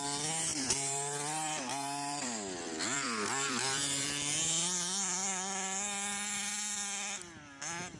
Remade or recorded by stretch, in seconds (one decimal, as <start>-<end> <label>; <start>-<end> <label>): 0.0-0.5 recorded; 0.5-4.4 remade; 4.4-8.0 recorded